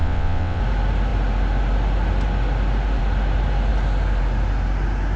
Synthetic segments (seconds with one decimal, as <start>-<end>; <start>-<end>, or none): 0.0-0.6